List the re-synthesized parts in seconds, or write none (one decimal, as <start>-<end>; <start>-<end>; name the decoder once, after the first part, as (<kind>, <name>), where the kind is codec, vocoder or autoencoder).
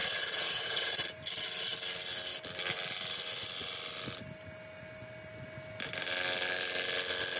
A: 0.0-1.0 (vocoder, Vocos)